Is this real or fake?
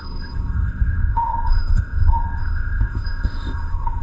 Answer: fake